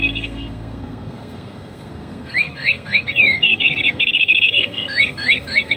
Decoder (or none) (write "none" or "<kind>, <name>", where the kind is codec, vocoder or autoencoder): codec, SNAC